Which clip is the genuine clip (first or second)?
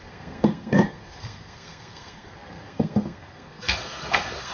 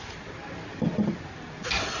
second